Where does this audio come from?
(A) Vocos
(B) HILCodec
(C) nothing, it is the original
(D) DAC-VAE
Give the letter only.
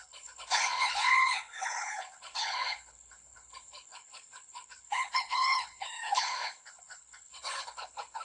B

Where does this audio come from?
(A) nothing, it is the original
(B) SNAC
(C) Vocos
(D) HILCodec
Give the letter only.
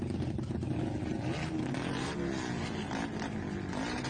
A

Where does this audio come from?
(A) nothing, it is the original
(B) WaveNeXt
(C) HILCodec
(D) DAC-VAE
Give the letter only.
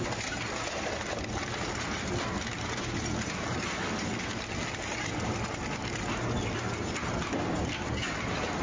A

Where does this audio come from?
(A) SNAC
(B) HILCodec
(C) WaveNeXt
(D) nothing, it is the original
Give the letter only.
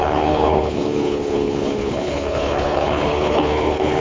B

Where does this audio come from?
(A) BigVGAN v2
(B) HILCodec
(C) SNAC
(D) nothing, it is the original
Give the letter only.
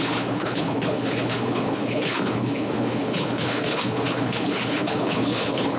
B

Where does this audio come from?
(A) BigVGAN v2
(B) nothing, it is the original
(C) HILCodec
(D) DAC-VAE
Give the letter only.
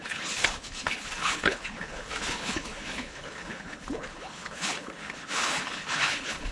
C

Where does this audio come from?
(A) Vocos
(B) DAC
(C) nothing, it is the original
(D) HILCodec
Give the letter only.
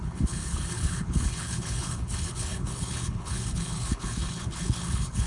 D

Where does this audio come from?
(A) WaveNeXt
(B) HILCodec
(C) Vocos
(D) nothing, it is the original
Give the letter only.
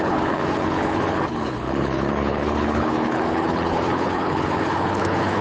B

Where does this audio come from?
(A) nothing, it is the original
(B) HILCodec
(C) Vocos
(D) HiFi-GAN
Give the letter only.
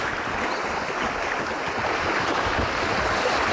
A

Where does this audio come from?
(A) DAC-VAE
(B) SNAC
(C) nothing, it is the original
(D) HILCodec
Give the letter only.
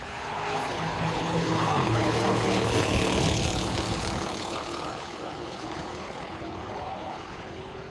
D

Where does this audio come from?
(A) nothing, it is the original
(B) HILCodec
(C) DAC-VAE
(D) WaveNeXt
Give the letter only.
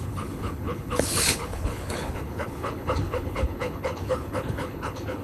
B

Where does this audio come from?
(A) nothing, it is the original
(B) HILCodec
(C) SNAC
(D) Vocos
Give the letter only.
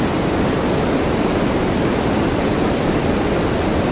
A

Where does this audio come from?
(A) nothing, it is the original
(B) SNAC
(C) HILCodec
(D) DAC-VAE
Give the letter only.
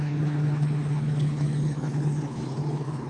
C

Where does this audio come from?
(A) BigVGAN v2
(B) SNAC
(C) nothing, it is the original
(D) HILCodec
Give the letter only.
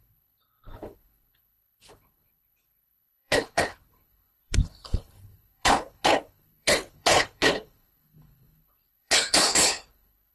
D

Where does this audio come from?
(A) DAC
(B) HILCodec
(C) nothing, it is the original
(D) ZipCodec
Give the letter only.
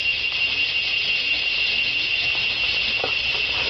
C